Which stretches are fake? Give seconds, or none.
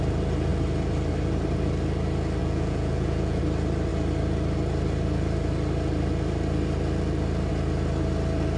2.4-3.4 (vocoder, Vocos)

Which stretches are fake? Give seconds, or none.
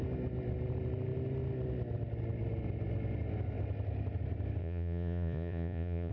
4.6-6.1 (vocoder, Vocos)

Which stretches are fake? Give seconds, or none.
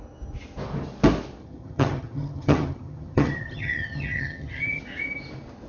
1.4-4.8 (vocoder, HiFi-GAN)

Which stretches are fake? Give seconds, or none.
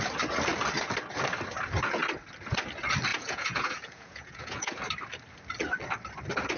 3.1-4.7 (vocoder, Vocos)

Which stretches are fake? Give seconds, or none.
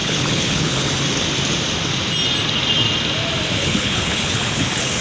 0.0-0.9 (codec, HILCodec); 3.6-5.0